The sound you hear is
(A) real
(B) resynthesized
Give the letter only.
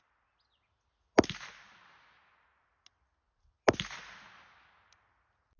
A